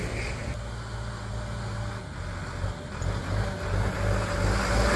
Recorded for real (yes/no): yes